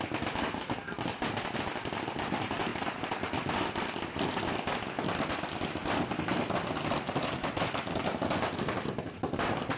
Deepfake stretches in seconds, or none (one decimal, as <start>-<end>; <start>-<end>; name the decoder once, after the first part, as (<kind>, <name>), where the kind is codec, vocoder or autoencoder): 0.0-5.8 (vocoder, BigVGAN v2); 8.6-9.8

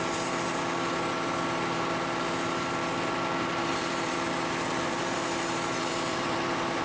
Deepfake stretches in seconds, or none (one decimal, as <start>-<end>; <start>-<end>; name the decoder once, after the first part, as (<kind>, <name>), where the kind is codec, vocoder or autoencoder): 0.0-0.6 (vocoder, BigVGAN v2); 3.7-6.8

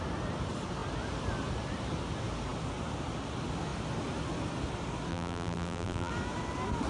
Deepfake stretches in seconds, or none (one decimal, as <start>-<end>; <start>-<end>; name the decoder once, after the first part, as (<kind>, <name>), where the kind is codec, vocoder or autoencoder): 5.1-6.1 (vocoder, BigVGAN v2)

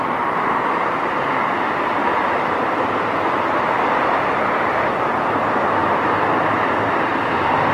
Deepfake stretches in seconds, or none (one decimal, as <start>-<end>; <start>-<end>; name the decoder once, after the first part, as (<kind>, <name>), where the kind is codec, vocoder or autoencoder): 2.0-4.6 (vocoder, BigVGAN v2)

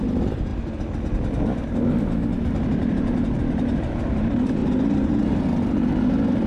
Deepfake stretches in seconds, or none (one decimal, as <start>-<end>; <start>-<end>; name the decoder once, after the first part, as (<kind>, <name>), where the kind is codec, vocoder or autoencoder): 0.0-0.5 (vocoder, BigVGAN v2); 3.4-4.6

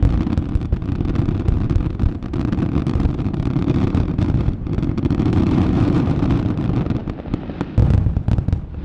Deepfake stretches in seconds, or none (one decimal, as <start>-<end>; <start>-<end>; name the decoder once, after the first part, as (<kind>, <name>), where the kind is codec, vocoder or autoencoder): 2.8-6.6 (vocoder, BigVGAN v2)

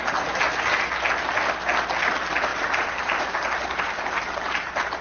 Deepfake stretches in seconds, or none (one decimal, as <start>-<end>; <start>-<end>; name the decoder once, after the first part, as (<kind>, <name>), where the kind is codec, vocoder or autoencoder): 2.5-5.0 (vocoder, BigVGAN v2)

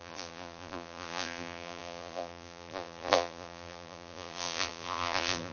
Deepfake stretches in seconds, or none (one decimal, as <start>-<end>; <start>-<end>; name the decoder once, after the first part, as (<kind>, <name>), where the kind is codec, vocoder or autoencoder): 0.0-5.5 (vocoder, BigVGAN v2)